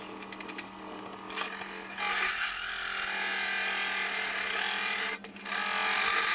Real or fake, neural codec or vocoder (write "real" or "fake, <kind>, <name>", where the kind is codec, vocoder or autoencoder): real